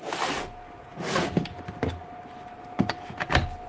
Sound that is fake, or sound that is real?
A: real